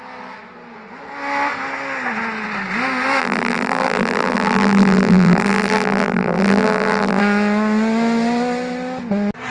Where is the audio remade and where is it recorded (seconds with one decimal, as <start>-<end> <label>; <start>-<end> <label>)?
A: 0.0-3.2 recorded; 3.2-7.2 remade; 7.2-9.5 recorded

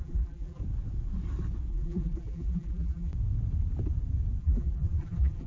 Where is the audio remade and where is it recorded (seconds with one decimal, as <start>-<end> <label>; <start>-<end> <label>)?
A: 0.0-0.6 remade; 0.6-1.7 recorded; 1.7-3.1 remade; 3.1-4.4 recorded; 4.4-5.5 remade

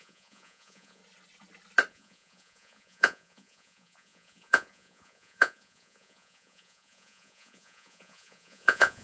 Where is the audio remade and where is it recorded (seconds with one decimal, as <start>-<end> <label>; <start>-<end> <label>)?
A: 0.0-1.0 remade; 1.0-1.9 recorded; 1.9-9.0 remade

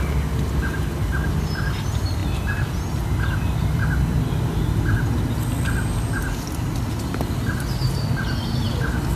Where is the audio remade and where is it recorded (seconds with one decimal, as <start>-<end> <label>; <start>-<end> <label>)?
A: 0.0-9.2 recorded

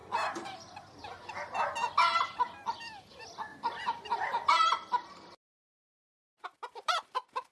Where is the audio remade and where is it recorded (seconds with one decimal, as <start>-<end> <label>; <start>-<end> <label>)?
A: 0.0-3.5 recorded; 3.5-7.5 remade

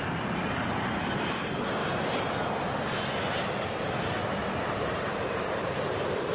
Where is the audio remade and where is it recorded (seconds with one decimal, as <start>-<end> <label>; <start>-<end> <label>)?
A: 0.0-1.8 remade; 1.8-4.6 recorded; 4.6-6.3 remade

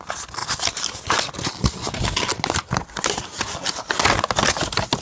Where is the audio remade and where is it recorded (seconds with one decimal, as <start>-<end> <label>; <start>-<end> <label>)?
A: 0.0-5.0 recorded